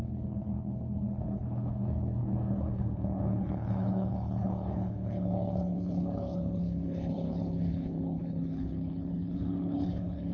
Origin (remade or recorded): remade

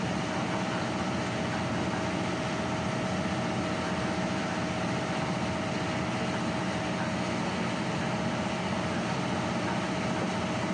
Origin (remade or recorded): recorded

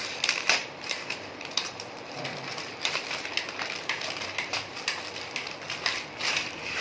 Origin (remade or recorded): remade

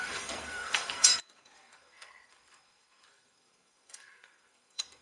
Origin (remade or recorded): remade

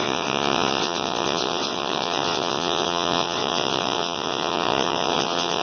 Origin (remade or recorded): remade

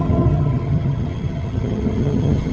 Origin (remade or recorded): remade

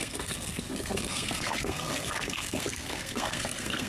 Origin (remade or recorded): remade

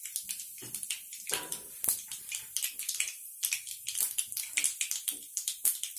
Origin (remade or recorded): remade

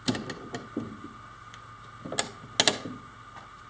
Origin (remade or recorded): recorded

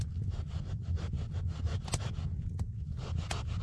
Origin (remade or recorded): recorded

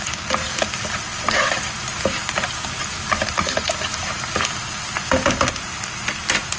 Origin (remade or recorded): recorded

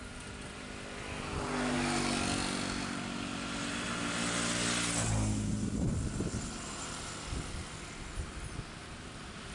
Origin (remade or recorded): recorded